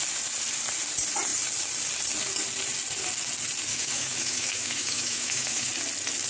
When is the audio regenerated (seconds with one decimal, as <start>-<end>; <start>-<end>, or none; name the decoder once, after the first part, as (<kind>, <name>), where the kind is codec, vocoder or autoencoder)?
3.7-5.7 (autoencoder, DAC-VAE)